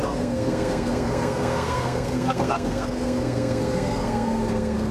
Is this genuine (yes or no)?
no